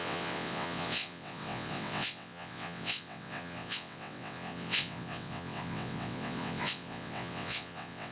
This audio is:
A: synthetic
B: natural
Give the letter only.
A